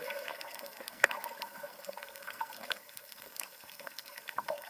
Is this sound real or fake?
fake